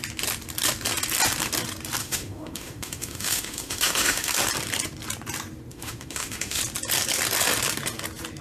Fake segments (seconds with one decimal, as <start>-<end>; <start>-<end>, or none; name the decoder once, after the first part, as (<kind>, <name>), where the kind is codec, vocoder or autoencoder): 2.0-4.3 (autoencoder, DAC-VAE); 5.7-6.6

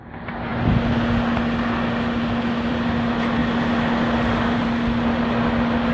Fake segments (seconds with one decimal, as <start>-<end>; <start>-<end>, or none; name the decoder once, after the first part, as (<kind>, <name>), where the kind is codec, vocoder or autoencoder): 0.0-0.5 (vocoder, BigVGAN v2); 2.7-5.9